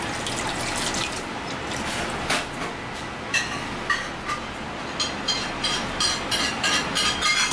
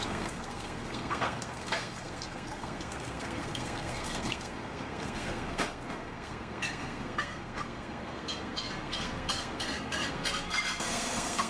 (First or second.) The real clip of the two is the first